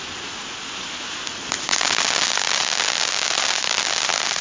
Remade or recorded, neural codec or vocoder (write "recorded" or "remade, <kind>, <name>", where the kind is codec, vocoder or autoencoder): recorded